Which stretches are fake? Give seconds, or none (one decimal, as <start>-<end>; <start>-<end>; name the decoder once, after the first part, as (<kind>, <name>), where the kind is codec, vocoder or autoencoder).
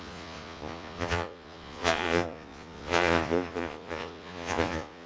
0.0-5.1 (vocoder, Vocos)